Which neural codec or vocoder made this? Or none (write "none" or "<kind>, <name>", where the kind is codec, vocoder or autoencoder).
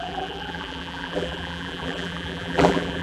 vocoder, BigVGAN v2